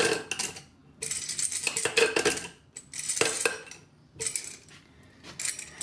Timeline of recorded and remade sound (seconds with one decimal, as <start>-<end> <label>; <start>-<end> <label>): 0.0-5.8 recorded